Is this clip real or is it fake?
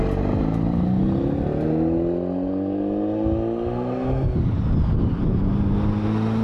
real